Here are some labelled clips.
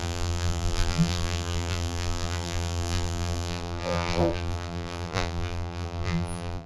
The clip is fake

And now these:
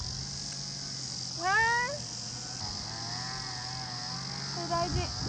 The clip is real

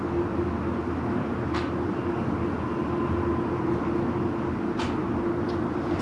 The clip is real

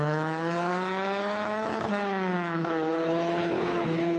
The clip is fake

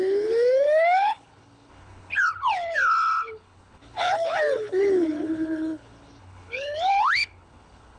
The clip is fake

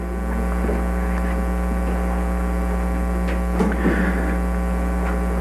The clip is real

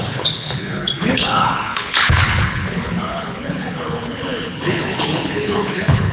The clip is fake